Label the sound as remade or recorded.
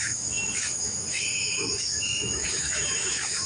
remade